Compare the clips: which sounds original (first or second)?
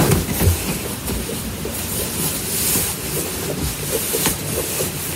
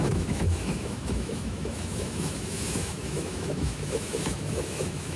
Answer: first